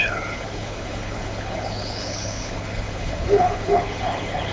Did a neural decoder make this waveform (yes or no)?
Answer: yes